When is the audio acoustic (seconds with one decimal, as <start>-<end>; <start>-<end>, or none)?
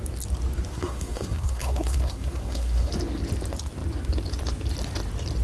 0.0-0.7; 2.9-5.4